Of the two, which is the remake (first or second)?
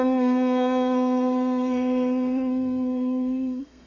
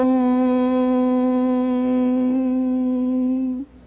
first